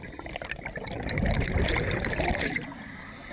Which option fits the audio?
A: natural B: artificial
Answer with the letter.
A